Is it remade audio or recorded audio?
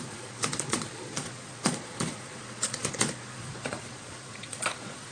remade